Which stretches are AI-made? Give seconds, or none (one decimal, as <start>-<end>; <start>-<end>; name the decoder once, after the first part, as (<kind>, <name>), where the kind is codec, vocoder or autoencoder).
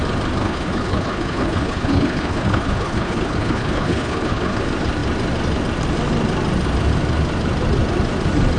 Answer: 0.4-4.6 (codec, HILCodec)